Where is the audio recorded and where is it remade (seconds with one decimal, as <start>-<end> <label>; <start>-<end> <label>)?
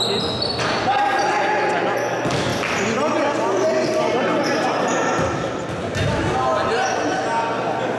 0.0-8.0 recorded